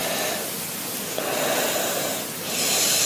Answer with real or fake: real